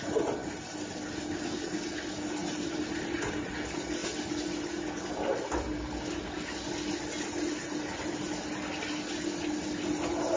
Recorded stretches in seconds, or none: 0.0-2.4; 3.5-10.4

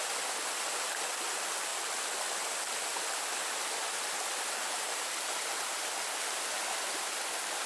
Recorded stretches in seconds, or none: 0.0-7.7

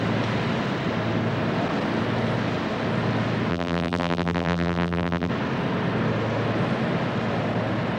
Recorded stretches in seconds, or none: 0.0-3.5; 5.3-8.0

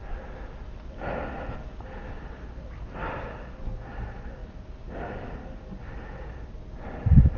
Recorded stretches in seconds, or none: 0.0-7.4

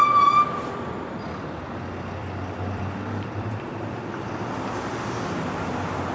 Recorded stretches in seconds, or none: 0.0-2.2

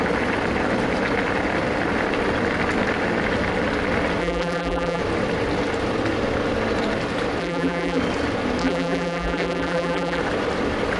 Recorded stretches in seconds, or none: 0.0-4.2; 5.0-7.4; 8.0-8.6; 10.2-11.0

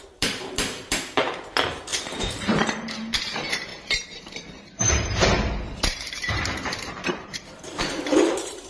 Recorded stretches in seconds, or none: none